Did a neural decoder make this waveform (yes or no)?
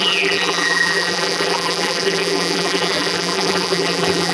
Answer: yes